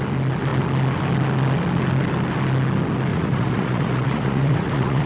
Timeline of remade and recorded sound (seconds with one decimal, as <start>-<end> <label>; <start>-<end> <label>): 0.0-3.1 recorded; 3.1-5.1 remade